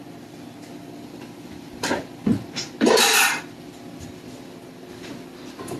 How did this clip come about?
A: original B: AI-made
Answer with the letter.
B